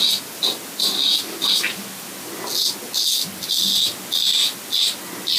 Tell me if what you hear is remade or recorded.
recorded